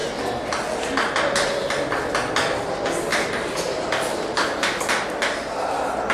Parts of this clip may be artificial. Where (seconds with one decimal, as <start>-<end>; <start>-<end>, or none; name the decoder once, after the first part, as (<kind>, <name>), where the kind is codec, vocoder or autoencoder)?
3.1-4.6 (vocoder, BigVGAN v2)